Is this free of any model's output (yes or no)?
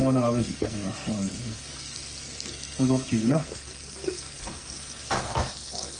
no